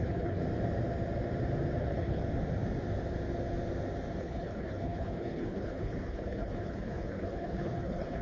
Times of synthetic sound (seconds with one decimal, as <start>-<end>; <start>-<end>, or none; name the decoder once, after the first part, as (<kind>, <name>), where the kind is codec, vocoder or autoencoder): 0.0-0.4 (codec, HILCodec); 1.8-2.2; 4.2-8.2